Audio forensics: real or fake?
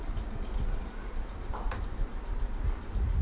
real